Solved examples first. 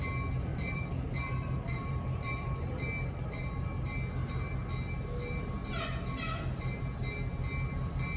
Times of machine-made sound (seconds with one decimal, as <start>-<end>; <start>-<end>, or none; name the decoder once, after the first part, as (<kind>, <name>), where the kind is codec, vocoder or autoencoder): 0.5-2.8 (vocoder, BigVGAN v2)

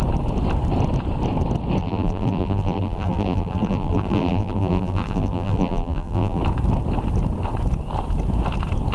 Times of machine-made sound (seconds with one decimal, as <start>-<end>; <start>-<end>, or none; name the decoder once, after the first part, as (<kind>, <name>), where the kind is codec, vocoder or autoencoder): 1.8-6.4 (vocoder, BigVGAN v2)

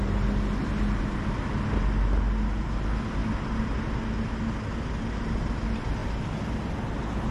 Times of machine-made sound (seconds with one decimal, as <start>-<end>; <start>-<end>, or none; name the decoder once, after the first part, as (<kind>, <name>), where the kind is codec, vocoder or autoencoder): none